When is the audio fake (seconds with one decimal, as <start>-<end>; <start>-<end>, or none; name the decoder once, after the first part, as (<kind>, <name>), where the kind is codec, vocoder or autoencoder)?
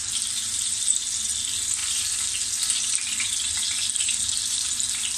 none